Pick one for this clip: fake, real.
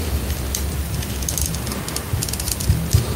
real